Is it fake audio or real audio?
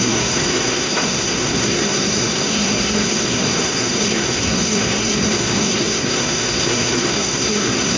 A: fake